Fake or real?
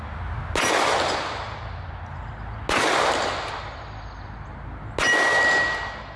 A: real